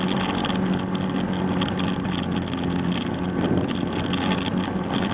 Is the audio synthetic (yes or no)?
no